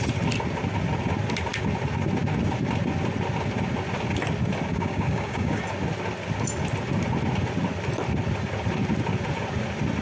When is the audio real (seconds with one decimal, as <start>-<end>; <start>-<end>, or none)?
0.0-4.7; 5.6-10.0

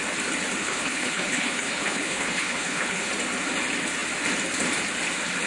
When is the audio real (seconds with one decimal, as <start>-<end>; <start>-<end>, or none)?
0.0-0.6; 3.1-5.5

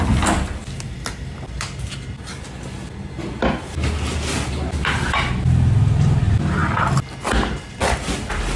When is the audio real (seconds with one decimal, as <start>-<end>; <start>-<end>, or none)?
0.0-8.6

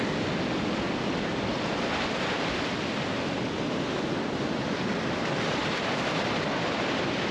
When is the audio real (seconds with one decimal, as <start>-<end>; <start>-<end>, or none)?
0.0-5.6; 6.8-7.3

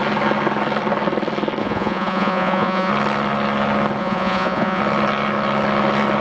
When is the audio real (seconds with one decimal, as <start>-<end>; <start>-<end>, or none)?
0.0-1.6; 2.9-4.0; 4.8-6.2